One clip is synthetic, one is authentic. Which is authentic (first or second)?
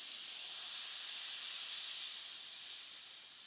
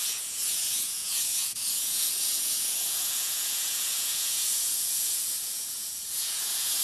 first